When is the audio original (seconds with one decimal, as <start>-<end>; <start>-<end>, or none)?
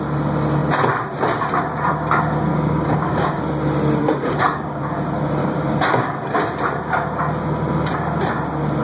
0.0-2.5; 3.4-4.0; 4.8-5.4; 6.4-8.8